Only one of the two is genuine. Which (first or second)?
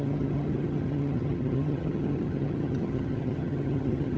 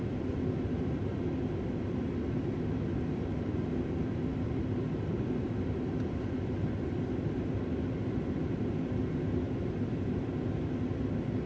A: second